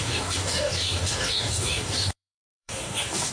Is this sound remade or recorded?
remade